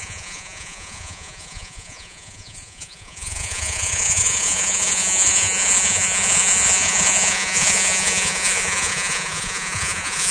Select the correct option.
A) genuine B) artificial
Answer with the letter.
B